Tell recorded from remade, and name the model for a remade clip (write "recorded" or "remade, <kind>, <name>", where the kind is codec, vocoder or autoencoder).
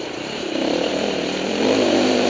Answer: remade, vocoder, BigVGAN v2